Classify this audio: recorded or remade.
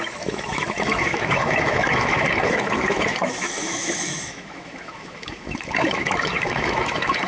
remade